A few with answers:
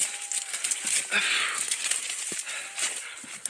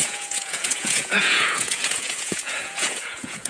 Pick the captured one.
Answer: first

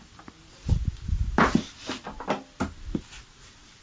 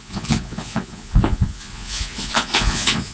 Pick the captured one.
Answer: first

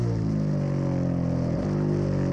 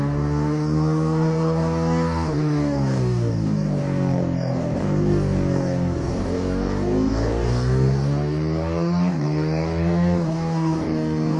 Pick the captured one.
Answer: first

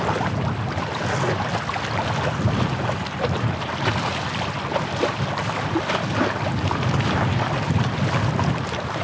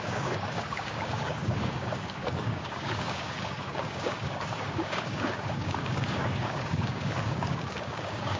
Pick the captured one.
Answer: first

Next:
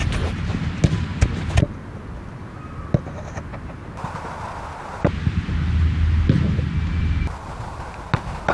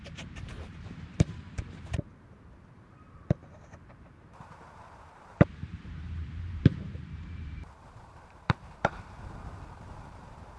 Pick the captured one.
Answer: first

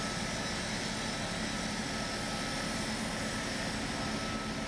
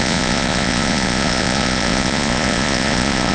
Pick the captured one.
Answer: first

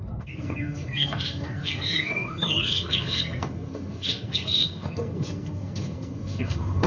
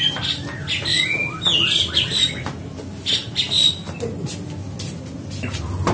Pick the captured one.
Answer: second